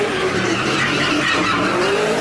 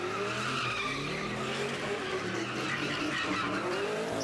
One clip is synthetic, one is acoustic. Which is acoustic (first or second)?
second